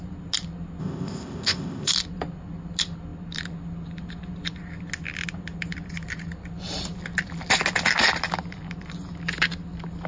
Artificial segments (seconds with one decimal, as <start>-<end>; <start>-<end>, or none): 0.8-1.9